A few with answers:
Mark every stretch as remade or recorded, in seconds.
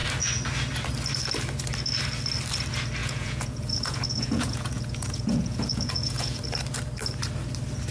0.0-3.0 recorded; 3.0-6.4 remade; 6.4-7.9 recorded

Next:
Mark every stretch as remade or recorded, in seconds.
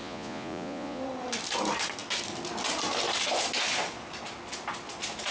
0.0-1.0 remade; 1.0-5.3 recorded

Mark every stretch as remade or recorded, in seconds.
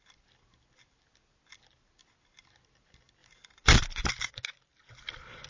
0.0-5.5 recorded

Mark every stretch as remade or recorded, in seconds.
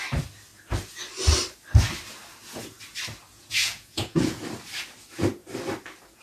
0.0-3.3 recorded; 3.3-4.4 remade; 4.4-6.2 recorded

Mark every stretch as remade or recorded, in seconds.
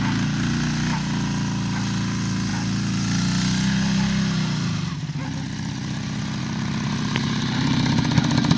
0.0-8.6 recorded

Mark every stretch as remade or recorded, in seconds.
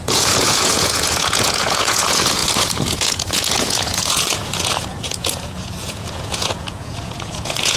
0.0-7.8 remade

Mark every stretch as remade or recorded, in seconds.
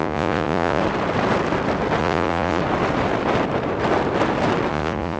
0.0-0.8 remade; 0.8-2.0 recorded; 2.0-2.6 remade; 2.6-4.7 recorded; 4.7-5.2 remade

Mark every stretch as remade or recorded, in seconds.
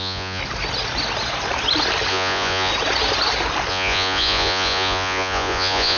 0.0-0.4 remade; 0.4-2.1 recorded; 2.1-2.7 remade; 2.7-3.7 recorded; 3.7-6.0 remade